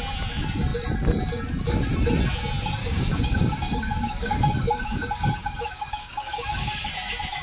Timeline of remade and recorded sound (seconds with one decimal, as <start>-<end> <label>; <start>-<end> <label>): 0.0-2.8 recorded; 2.8-6.9 remade; 6.9-7.4 recorded